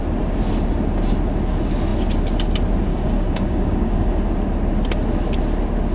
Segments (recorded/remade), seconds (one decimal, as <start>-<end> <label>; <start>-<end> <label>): 0.0-2.9 recorded; 2.9-4.2 remade; 4.2-5.9 recorded